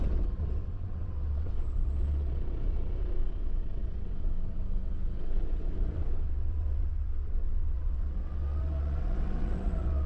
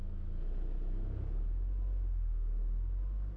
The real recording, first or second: second